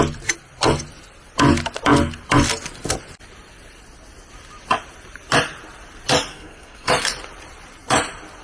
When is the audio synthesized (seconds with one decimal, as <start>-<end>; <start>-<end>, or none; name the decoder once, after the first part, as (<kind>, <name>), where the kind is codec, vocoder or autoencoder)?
6.3-6.9 (codec, SNAC)